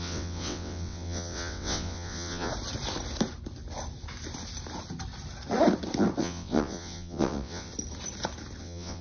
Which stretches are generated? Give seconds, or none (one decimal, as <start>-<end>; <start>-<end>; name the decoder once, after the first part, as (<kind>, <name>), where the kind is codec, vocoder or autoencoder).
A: 0.0-2.5 (vocoder, WaveNeXt); 6.2-7.7; 8.6-9.0

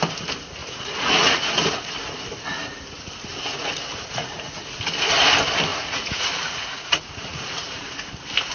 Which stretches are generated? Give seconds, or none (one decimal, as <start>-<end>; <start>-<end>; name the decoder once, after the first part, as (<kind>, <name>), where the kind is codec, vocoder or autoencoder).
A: 0.6-1.4 (vocoder, Vocos); 3.5-4.7; 5.7-7.8

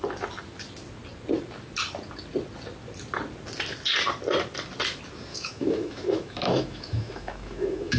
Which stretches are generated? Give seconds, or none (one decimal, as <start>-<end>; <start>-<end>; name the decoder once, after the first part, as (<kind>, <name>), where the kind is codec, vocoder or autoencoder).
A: 5.3-8.0 (autoencoder, DAC-VAE)

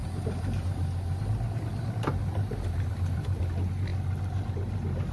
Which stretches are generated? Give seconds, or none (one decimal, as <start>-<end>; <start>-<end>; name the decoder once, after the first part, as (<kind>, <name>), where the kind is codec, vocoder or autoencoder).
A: 2.2-3.4 (vocoder, BigVGAN v2)

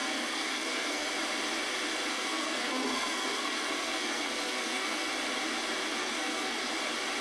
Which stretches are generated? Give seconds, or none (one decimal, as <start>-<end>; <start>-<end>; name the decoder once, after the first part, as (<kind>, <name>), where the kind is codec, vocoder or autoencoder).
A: 0.0-1.1 (codec, SNAC); 2.1-5.1; 6.0-6.7

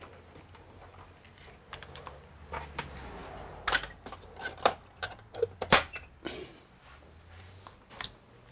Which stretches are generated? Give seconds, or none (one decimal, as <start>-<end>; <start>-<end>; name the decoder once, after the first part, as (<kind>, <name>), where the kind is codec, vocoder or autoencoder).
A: none

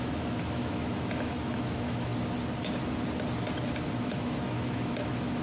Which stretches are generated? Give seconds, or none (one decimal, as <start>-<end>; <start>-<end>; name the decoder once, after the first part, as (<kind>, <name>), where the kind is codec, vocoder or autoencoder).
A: 0.0-2.1 (autoencoder, DAC-VAE); 4.0-5.4

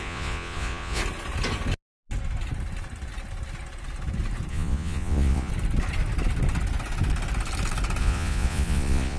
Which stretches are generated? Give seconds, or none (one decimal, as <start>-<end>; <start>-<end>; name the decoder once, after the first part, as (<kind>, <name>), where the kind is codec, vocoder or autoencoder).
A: 0.0-1.0 (vocoder, Vocos); 4.5-5.5; 8.0-9.2